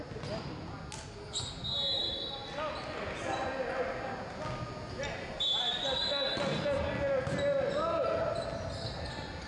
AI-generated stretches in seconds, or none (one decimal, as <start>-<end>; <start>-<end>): none